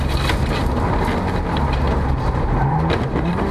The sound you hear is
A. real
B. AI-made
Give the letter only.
B